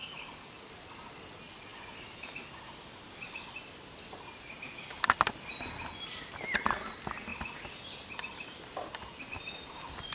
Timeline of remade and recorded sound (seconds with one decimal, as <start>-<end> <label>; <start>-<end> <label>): 0.0-0.7 remade; 0.7-10.1 recorded